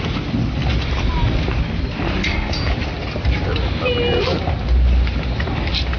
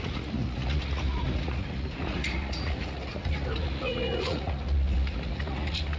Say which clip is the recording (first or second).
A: first